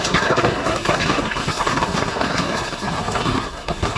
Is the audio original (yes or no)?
no